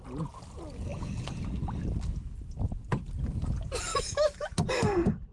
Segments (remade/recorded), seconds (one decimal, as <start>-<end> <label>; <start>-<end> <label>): 0.0-3.9 recorded; 3.9-4.5 remade; 4.5-5.3 recorded